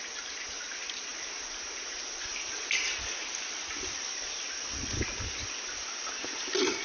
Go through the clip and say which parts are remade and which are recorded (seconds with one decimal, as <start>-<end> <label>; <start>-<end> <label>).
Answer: 0.0-6.8 recorded